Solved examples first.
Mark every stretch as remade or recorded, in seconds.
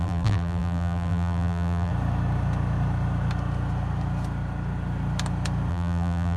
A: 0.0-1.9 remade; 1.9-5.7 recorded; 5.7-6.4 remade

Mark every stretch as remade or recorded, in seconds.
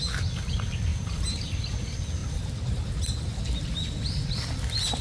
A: 0.0-0.9 recorded; 0.9-1.8 remade; 1.8-5.0 recorded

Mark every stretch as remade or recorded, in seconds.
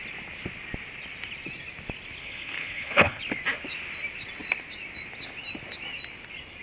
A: 0.0-2.2 recorded; 2.2-3.2 remade; 3.2-6.6 recorded